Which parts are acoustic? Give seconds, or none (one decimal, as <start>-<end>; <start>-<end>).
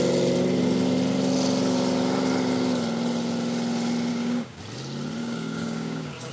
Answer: 0.0-4.1; 4.6-5.2